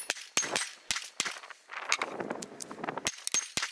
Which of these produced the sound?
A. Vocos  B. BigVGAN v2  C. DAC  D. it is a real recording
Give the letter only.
D